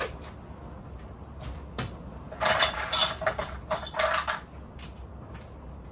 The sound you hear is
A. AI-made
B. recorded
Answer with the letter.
B